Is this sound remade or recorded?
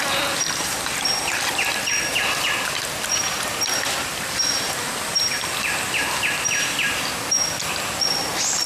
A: recorded